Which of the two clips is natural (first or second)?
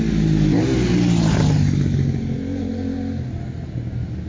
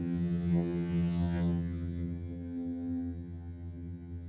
first